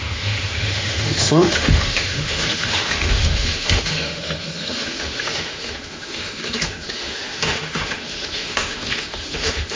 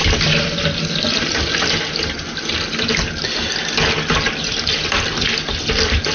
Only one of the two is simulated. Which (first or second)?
first